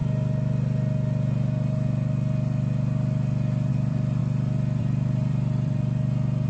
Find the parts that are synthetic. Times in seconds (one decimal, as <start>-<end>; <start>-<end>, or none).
3.7-4.2; 4.8-6.5